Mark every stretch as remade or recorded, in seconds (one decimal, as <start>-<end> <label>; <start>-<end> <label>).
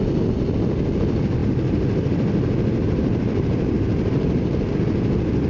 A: 0.0-5.5 recorded